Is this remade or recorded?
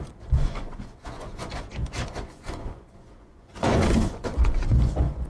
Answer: remade